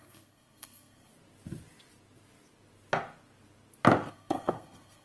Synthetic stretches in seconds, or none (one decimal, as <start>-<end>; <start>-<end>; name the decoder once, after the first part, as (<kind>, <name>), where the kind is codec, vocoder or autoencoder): 0.0-1.1 (codec, SNAC); 4.1-5.0